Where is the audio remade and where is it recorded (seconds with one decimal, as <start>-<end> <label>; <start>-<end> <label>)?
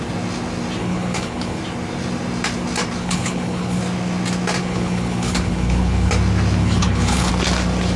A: 0.0-0.8 recorded; 0.8-1.6 remade; 1.6-3.0 recorded; 3.0-3.8 remade; 3.8-4.6 recorded; 4.6-6.1 remade; 6.1-6.6 recorded; 6.6-7.3 remade; 7.3-8.0 recorded